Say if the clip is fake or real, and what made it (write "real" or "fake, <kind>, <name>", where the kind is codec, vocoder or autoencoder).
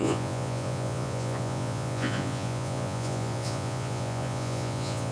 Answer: fake, vocoder, Vocos